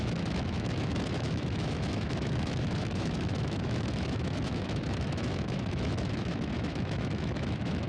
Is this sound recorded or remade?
remade